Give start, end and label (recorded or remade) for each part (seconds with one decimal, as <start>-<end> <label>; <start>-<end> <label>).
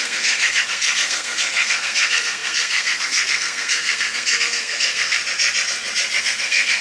0.0-5.2 remade; 5.2-6.2 recorded; 6.2-6.8 remade